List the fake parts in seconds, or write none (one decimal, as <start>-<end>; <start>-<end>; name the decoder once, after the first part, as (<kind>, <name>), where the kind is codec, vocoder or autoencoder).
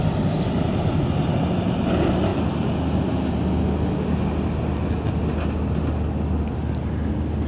none